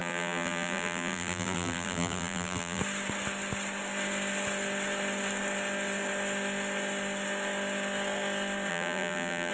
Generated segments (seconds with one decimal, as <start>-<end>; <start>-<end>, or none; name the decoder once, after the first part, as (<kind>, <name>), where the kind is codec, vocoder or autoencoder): 0.0-2.8 (vocoder, BigVGAN v2); 8.7-9.5